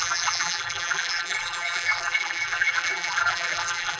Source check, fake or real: fake